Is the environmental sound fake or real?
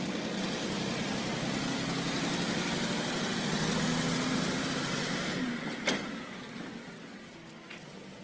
real